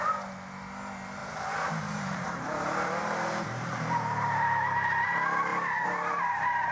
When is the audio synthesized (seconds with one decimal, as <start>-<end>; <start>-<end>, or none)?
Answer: 1.2-5.1; 5.5-6.7